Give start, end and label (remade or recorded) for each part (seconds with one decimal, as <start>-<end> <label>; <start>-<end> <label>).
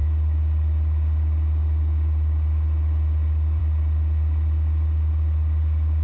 0.0-6.0 recorded